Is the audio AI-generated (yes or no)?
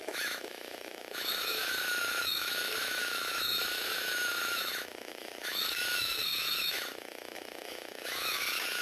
yes